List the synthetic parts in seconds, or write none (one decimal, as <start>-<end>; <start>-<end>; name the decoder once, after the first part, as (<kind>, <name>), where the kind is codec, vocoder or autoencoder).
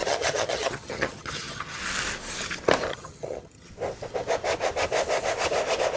0.0-1.8 (vocoder, HiFi-GAN); 2.9-3.7